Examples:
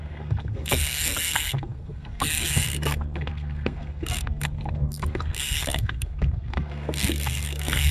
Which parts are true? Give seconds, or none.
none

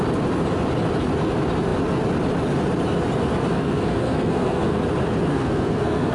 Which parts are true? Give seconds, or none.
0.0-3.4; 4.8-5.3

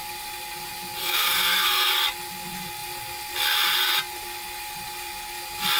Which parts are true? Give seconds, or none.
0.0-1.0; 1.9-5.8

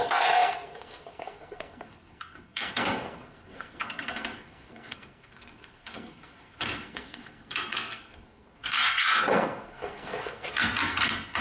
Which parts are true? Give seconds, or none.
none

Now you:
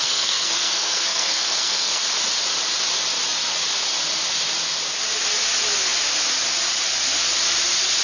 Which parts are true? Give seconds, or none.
2.0-8.0

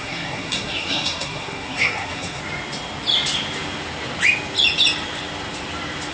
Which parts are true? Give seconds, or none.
2.4-6.1

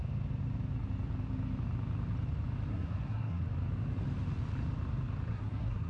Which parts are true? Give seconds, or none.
0.0-2.7; 3.4-5.3

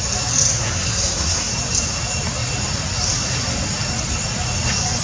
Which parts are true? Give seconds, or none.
0.0-0.6; 1.5-5.0